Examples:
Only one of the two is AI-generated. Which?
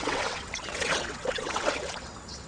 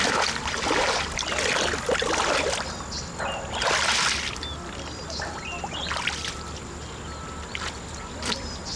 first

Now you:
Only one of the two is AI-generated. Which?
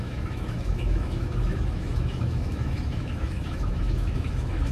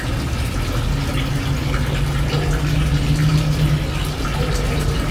first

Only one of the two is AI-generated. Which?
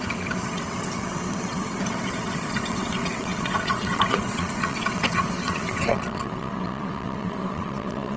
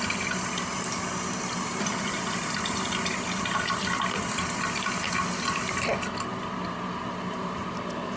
first